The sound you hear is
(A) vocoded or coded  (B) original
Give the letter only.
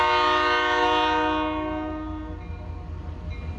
B